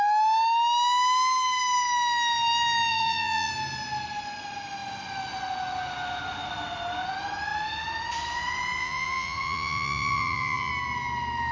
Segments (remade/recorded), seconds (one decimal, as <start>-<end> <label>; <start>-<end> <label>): 0.0-2.9 recorded; 2.9-3.5 remade; 3.5-8.8 recorded; 8.8-10.7 remade; 10.7-11.5 recorded